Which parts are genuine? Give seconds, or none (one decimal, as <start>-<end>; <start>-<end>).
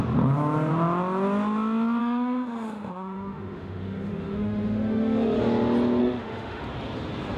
0.0-2.0; 5.4-6.0; 6.6-7.4